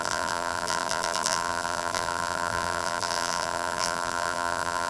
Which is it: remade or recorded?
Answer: remade